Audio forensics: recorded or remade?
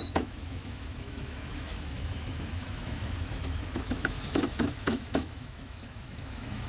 remade